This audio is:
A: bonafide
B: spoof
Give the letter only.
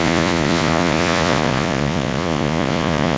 B